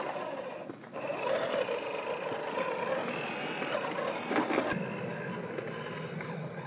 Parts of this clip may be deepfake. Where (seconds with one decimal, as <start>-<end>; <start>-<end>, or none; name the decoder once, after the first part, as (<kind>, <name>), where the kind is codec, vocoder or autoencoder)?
none